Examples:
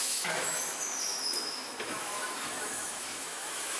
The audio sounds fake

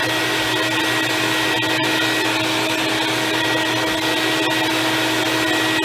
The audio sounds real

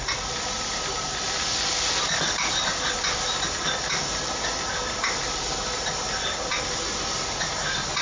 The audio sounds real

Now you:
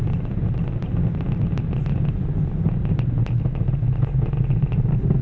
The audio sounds real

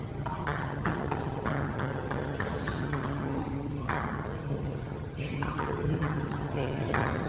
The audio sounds fake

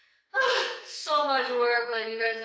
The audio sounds fake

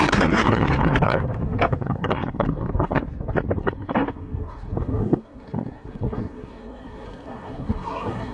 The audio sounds fake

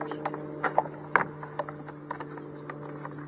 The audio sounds real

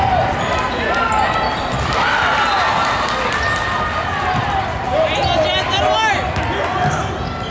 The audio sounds real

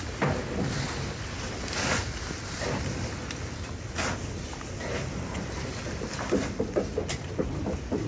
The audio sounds real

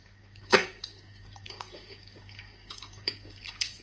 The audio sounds fake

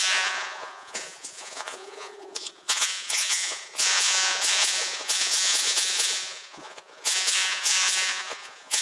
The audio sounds fake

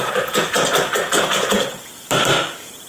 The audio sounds real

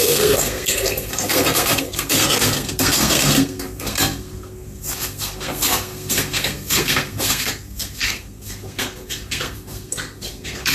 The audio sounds fake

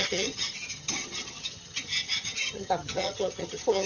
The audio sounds fake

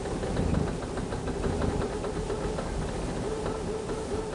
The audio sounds real